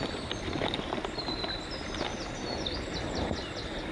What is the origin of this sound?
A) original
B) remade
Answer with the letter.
A